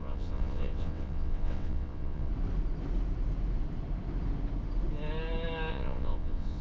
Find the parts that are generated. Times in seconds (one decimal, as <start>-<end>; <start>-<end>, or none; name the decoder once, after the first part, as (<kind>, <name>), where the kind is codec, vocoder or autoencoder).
0.0-2.3 (vocoder, WaveNeXt); 5.7-6.6